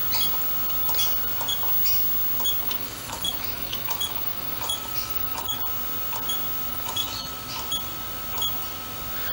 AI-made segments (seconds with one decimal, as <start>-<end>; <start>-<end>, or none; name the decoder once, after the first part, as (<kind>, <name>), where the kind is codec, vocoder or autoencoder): 2.6-5.6 (autoencoder, DAC-VAE); 6.7-7.3